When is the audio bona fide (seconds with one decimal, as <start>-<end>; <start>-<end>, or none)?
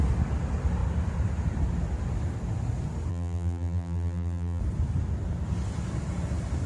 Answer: 0.0-3.1; 4.6-6.7